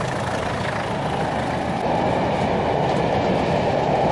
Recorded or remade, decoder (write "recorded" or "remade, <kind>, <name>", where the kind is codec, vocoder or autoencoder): recorded